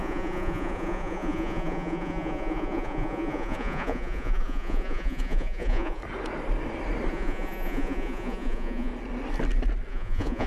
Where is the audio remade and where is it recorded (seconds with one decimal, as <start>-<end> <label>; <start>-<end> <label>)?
0.0-6.0 remade; 6.0-7.1 recorded; 7.1-8.9 remade; 8.9-9.9 recorded; 9.9-10.5 remade

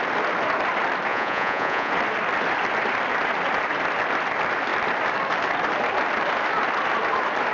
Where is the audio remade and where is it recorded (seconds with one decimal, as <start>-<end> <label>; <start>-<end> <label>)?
0.0-1.1 recorded; 1.1-1.9 remade; 1.9-7.5 recorded

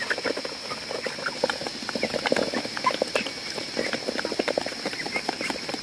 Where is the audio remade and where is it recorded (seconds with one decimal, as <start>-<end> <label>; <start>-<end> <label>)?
0.0-5.8 recorded

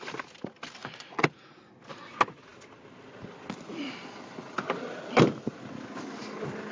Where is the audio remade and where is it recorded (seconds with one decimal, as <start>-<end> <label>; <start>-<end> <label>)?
0.0-0.8 recorded; 0.8-1.6 remade; 1.6-6.7 recorded

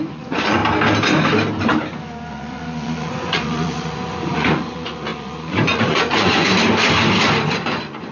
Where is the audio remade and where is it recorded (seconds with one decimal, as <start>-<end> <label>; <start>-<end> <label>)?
0.0-0.6 remade; 0.6-2.3 recorded; 2.3-6.5 remade; 6.5-7.5 recorded; 7.5-8.1 remade